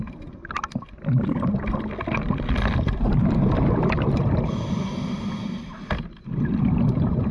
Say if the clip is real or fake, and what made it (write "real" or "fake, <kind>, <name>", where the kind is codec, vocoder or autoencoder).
real